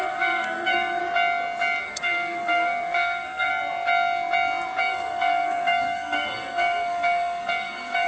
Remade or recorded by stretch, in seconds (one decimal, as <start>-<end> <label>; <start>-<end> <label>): 0.0-1.0 remade; 1.0-1.8 recorded; 1.8-3.5 remade; 3.5-4.8 recorded; 4.8-8.1 remade